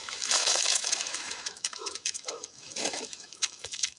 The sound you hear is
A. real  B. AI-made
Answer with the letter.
B